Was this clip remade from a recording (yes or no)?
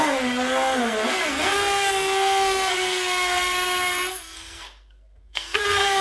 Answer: yes